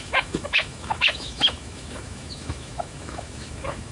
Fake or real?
fake